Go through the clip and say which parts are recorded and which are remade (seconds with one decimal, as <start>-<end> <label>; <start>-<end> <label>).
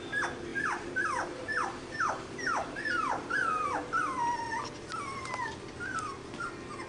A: 0.0-0.5 recorded; 0.5-3.8 remade; 3.8-6.9 recorded